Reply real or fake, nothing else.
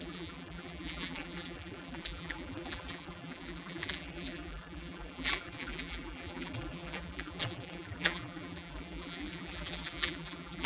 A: fake